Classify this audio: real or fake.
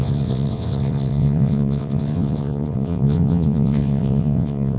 fake